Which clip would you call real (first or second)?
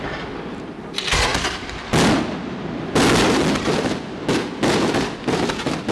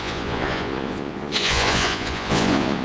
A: first